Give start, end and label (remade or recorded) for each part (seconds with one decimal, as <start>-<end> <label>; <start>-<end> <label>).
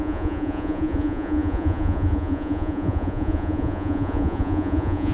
0.0-5.1 remade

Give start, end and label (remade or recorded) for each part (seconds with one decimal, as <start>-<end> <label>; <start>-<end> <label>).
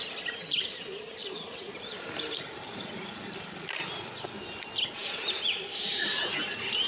0.0-1.2 recorded; 1.2-2.9 remade; 2.9-6.9 recorded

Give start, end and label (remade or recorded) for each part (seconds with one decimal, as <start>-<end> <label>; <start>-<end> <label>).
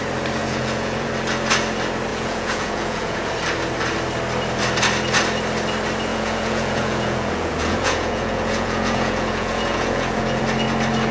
0.0-0.4 recorded; 0.4-1.1 remade; 1.1-2.1 recorded; 2.1-3.3 remade; 3.3-6.1 recorded; 6.1-10.4 remade; 10.4-11.1 recorded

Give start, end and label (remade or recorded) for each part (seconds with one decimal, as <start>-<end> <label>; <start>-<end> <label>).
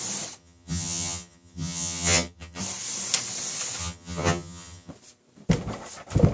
0.0-0.4 recorded; 0.4-2.6 remade; 2.6-3.8 recorded; 3.8-4.9 remade; 4.9-6.3 recorded